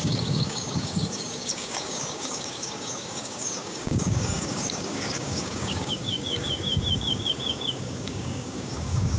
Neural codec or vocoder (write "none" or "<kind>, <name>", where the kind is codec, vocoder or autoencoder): codec, DAC